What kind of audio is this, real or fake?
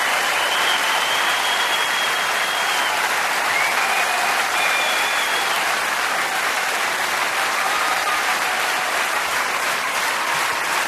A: real